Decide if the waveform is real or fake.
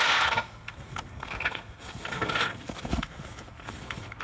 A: fake